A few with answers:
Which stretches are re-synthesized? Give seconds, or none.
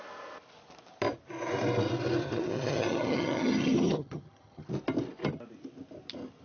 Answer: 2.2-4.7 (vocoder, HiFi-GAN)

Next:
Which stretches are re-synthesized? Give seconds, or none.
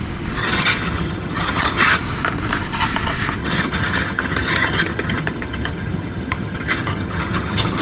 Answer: 0.4-2.0 (vocoder, HiFi-GAN); 3.4-7.8